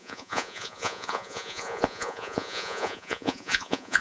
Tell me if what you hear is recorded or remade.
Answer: remade